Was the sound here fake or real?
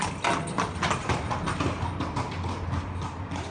real